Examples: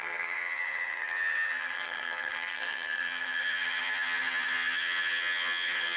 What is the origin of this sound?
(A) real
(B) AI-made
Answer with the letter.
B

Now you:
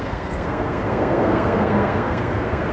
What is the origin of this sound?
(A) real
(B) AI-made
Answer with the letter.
B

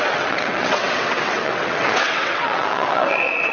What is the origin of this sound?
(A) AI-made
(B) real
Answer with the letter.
A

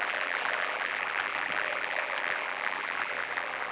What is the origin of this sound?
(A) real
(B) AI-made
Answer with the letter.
B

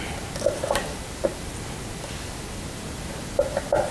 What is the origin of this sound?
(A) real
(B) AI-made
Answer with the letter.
A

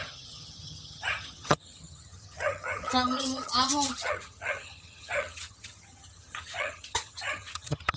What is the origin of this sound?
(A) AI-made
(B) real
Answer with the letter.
A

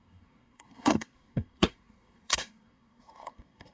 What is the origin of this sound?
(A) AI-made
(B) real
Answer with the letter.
A